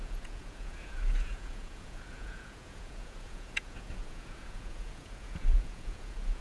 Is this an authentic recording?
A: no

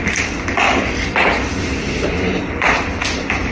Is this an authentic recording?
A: no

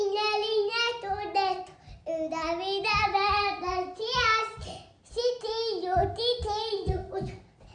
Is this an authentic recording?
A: yes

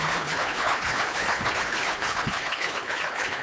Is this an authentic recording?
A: no